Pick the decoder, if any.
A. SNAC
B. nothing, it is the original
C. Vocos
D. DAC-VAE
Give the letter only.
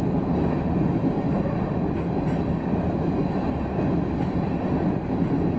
B